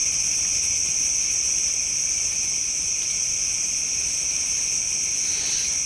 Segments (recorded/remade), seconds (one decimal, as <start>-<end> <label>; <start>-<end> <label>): 0.0-5.9 recorded